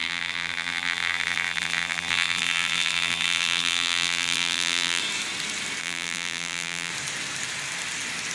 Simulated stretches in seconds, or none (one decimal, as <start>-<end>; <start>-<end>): 0.0-5.0; 5.8-6.9